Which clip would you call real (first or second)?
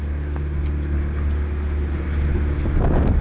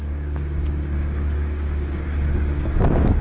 first